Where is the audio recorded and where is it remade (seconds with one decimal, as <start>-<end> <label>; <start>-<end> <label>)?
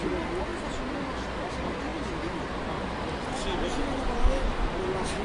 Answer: 0.0-5.2 recorded